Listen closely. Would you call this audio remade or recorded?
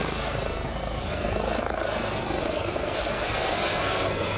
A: remade